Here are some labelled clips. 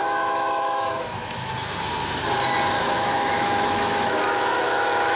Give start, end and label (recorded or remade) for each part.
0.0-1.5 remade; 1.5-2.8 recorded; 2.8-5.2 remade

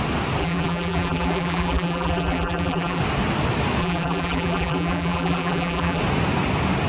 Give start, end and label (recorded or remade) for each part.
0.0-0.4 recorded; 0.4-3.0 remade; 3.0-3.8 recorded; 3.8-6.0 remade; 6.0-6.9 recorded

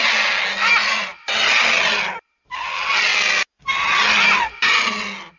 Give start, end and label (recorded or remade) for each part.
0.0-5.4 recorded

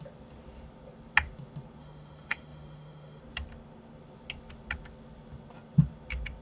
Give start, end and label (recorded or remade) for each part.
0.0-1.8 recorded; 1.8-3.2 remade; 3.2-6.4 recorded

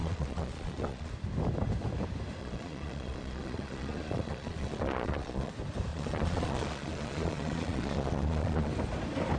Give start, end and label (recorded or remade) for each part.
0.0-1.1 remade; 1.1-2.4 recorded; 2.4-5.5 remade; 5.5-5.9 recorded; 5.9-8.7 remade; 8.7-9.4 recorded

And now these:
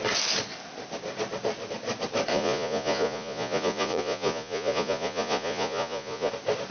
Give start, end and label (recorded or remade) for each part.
0.0-2.3 recorded; 2.3-6.3 remade; 6.3-6.7 recorded